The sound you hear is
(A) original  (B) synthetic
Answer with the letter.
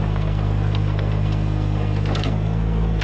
B